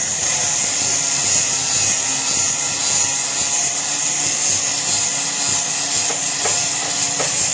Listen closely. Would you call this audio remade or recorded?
recorded